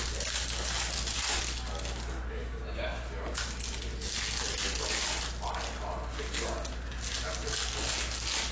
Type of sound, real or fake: real